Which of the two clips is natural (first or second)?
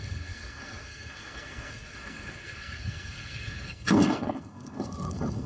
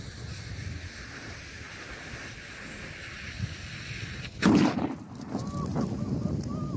second